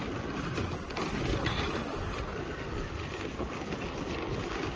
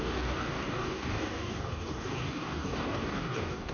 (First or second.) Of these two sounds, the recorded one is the first